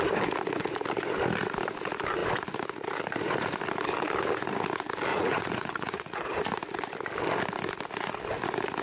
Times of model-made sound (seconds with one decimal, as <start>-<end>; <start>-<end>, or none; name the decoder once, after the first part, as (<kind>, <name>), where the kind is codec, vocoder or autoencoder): 5.1-6.5 (vocoder, Vocos)